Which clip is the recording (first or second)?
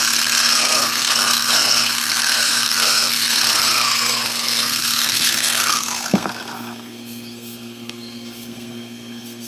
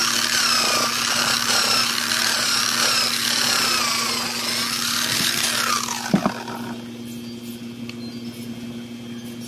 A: second